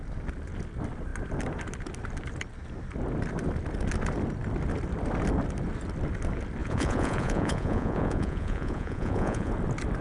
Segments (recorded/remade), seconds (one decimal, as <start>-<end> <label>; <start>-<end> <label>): 0.0-6.6 recorded; 6.6-9.5 remade; 9.5-10.0 recorded